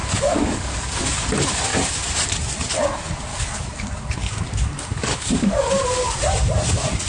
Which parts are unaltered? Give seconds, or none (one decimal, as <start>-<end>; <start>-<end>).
1.0-3.3; 5.7-7.1